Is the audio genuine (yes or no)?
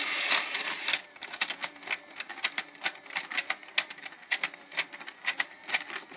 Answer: yes